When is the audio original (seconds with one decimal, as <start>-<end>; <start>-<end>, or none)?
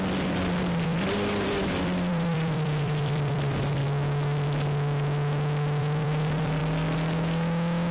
3.8-5.8; 6.6-7.9